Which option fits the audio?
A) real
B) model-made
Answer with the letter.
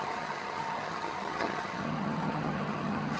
B